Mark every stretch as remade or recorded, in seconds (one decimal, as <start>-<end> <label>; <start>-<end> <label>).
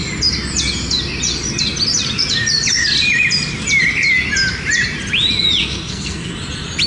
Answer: 0.0-5.6 recorded; 5.6-6.3 remade; 6.3-6.9 recorded